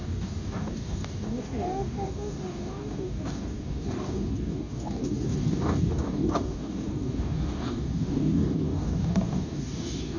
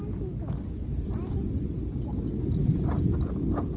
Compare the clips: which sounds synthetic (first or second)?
first